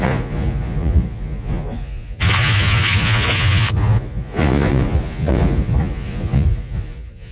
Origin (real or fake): fake